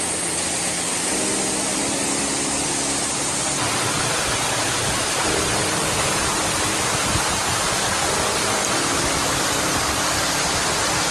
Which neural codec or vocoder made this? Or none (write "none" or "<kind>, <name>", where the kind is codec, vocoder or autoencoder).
none